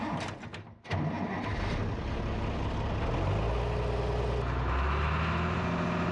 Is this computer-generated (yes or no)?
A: no